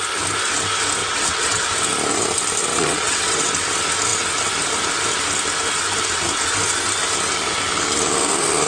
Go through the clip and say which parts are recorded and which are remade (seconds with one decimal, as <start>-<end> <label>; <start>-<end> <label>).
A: 0.0-1.0 recorded; 1.0-1.6 remade; 1.6-2.7 recorded; 2.7-3.5 remade; 3.5-8.7 recorded

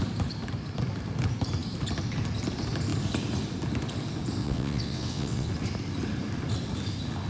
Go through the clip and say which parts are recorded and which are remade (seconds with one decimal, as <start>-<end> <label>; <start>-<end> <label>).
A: 0.0-4.4 recorded; 4.4-5.5 remade; 5.5-7.3 recorded

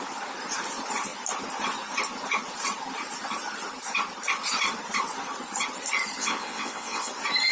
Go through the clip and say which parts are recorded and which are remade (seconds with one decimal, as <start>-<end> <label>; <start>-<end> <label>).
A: 0.0-6.2 recorded; 6.2-7.1 remade; 7.1-7.5 recorded

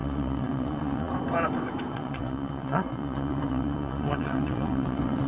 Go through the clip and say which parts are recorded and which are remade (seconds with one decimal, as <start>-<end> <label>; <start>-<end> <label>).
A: 0.0-1.1 remade; 1.1-1.9 recorded; 1.9-5.3 remade